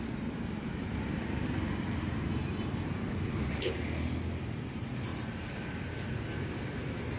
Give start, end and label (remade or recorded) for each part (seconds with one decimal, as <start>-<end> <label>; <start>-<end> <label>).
0.0-3.0 recorded; 3.0-3.7 remade; 3.7-7.2 recorded